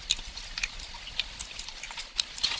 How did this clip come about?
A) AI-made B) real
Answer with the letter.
B